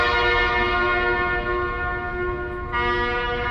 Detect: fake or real real